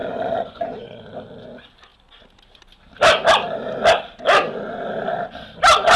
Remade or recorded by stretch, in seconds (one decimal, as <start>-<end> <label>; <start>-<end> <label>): 0.0-1.0 remade; 1.0-6.0 recorded